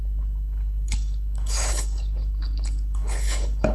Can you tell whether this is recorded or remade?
remade